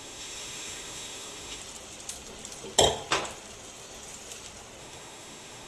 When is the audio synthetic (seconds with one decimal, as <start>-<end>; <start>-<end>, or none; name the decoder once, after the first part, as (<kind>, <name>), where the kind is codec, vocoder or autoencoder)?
0.0-1.6 (autoencoder, DAC-VAE); 4.8-5.7